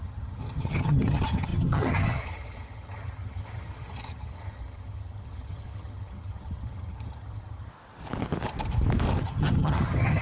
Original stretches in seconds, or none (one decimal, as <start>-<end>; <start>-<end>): 7.7-9.2